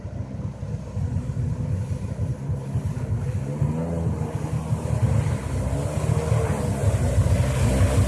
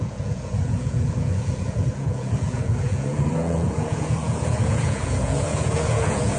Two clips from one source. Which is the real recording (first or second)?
first